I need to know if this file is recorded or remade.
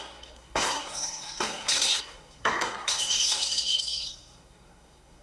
remade